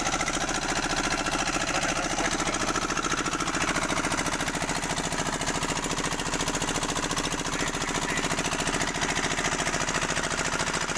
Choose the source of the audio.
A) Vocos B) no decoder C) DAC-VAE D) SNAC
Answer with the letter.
B